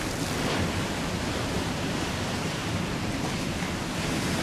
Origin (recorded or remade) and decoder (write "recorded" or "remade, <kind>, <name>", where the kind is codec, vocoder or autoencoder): remade, vocoder, BigVGAN v2